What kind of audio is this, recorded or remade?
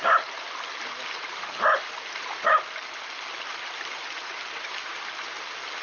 recorded